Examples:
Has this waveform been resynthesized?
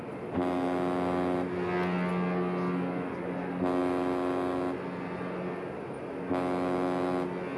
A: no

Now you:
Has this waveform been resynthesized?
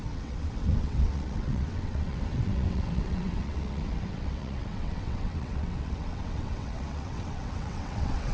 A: yes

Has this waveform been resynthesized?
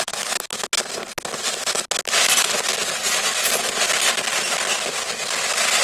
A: no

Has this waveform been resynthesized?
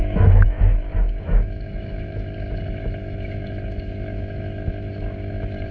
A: yes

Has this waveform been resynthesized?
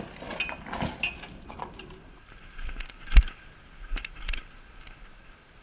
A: no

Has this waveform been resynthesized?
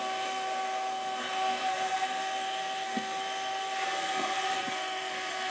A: yes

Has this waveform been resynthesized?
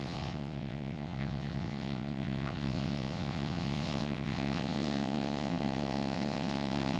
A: yes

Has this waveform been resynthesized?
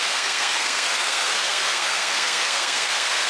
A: yes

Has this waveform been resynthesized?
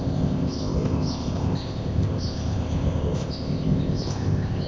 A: yes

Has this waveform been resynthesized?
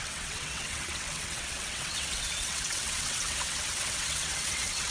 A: yes